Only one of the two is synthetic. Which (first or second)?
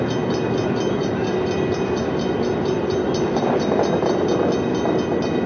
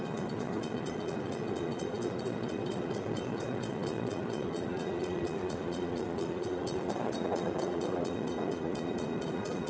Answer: second